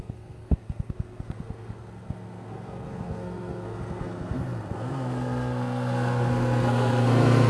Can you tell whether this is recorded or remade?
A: remade